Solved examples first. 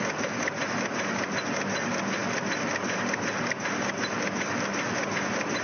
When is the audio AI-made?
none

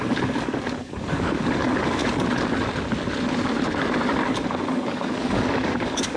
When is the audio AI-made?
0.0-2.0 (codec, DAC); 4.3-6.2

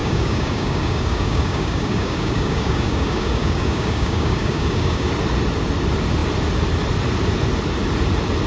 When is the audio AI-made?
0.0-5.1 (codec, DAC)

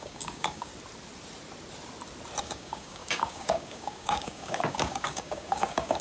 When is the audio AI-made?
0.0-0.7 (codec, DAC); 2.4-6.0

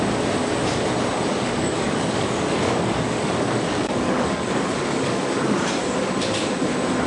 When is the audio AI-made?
1.3-5.6 (codec, DAC)

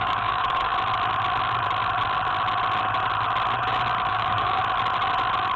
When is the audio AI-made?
0.0-0.7 (codec, DAC); 4.1-4.6

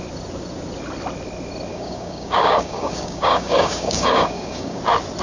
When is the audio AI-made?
1.7-4.8 (codec, DAC)

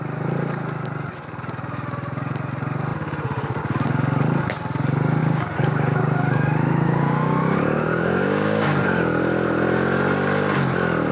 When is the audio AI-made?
5.2-9.2 (codec, DAC)